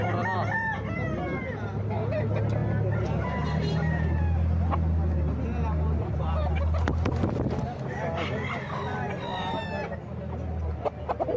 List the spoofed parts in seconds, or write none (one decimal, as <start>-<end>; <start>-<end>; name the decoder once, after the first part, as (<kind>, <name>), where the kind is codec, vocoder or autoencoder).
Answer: none